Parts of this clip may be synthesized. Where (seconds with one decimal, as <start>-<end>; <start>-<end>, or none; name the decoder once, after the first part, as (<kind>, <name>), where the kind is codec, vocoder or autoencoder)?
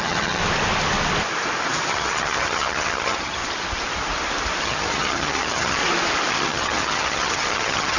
0.0-0.4 (vocoder, HiFi-GAN); 1.9-3.4; 4.6-5.8; 6.3-8.0